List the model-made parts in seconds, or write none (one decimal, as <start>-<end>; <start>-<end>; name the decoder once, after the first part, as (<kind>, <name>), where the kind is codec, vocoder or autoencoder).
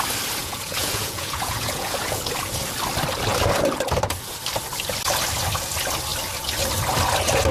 0.4-2.3 (vocoder, Vocos)